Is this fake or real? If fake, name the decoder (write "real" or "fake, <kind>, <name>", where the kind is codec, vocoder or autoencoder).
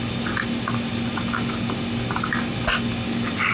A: real